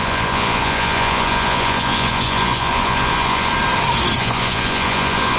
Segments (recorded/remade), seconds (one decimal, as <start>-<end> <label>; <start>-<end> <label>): 0.0-3.5 remade; 3.5-4.2 recorded; 4.2-5.4 remade